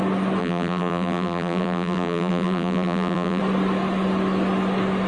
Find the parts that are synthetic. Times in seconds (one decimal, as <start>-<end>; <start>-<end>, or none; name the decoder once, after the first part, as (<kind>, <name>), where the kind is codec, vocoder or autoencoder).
0.4-3.4 (vocoder, BigVGAN v2)